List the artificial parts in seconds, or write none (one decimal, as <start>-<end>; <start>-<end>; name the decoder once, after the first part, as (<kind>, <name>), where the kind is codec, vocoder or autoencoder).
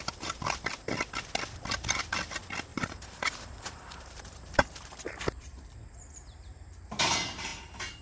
2.7-5.6 (vocoder, BigVGAN v2)